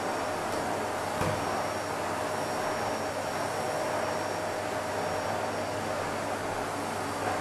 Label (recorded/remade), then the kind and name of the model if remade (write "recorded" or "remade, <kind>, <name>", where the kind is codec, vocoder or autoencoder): recorded